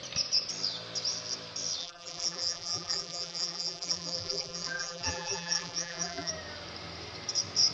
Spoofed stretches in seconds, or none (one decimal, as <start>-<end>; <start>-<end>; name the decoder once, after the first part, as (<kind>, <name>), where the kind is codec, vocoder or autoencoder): 1.8-6.3 (vocoder, BigVGAN v2)